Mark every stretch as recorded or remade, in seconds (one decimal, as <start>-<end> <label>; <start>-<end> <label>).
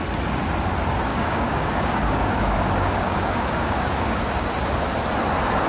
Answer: 0.0-1.1 recorded; 1.1-4.5 remade; 4.5-5.7 recorded